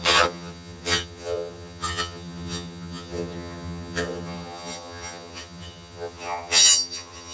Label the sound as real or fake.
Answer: fake